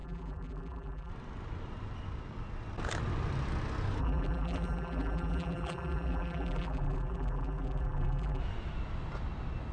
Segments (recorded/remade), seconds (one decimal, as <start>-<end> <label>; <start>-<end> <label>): 0.0-1.1 remade; 1.1-4.0 recorded; 4.0-8.4 remade; 8.4-9.7 recorded